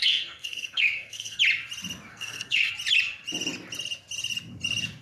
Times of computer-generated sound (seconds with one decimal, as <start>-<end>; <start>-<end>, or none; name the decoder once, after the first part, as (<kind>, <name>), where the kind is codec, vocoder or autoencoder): 0.0-1.4 (codec, SNAC); 2.1-2.7